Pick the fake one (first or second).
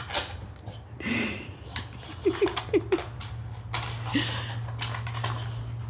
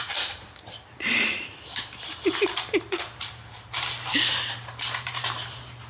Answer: second